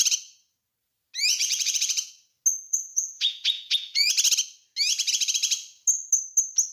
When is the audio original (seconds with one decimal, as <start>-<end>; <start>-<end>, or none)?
0.0-1.3; 2.1-2.5; 4.1-6.7

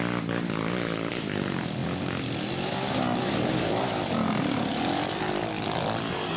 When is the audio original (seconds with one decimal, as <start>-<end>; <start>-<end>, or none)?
0.0-6.4

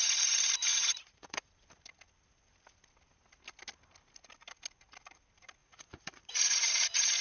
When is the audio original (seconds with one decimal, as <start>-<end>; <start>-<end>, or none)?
0.0-0.7; 1.5-5.6; 6.3-7.2

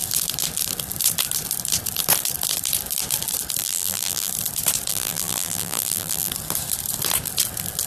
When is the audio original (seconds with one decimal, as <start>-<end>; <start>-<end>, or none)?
0.0-3.6; 4.3-4.9; 6.3-7.9

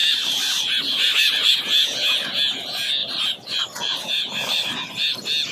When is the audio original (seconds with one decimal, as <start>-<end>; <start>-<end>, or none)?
1.5-3.0; 4.7-5.5

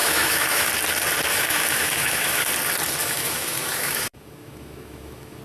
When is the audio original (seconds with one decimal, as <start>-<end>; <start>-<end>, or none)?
0.7-1.3; 2.5-3.0

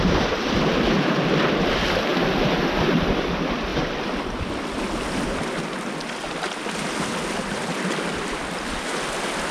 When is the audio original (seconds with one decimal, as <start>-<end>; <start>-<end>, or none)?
0.0-9.5

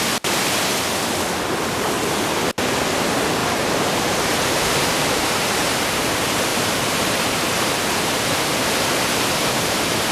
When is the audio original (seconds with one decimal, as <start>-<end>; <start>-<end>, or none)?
0.0-3.4; 6.1-6.5